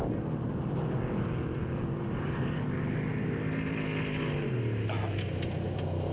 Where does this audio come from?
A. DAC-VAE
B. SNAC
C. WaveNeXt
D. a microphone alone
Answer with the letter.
D